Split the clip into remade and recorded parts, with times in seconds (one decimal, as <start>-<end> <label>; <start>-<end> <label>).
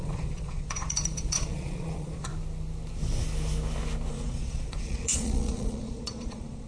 0.0-2.3 remade; 2.3-4.1 recorded; 4.1-6.7 remade